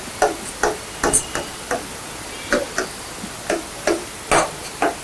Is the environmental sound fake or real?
real